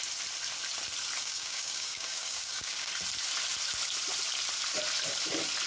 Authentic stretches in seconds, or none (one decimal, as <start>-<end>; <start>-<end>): 0.0-1.2; 2.9-5.7